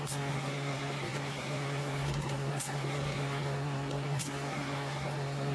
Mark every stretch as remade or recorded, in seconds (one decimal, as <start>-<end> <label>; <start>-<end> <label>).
0.0-5.5 remade